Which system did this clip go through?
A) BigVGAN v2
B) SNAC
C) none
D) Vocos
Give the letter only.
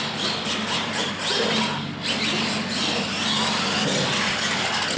C